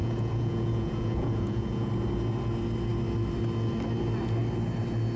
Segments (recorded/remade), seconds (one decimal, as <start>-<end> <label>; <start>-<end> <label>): 0.0-1.9 remade; 1.9-5.2 recorded